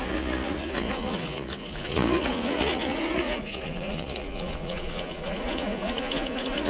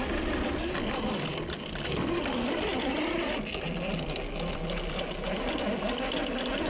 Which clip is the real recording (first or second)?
second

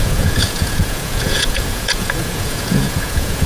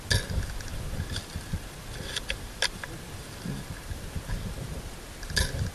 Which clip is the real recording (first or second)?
second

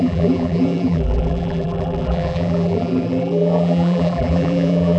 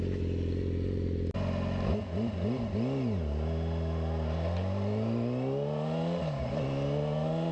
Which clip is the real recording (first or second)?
second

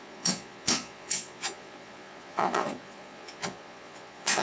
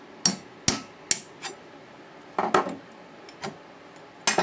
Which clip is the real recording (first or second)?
second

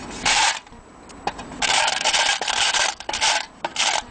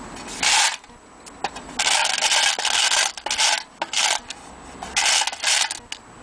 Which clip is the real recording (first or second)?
second